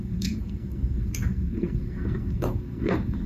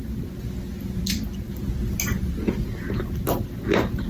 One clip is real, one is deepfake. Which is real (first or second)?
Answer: second